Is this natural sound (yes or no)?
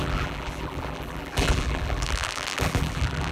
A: no